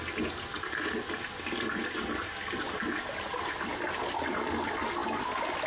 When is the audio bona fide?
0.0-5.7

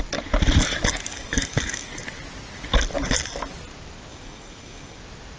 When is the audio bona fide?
0.0-1.1; 1.9-4.1; 5.0-5.4

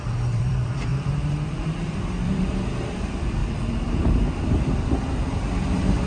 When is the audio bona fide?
none